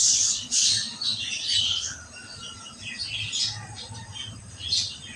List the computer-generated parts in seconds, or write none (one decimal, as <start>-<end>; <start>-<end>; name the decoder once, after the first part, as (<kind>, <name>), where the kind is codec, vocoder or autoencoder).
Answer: 0.0-0.7 (codec, HILCodec); 1.6-2.0